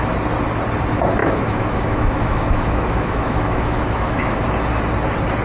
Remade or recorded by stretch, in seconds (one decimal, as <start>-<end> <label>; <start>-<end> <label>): 0.0-1.2 recorded; 1.2-4.4 remade; 4.4-5.4 recorded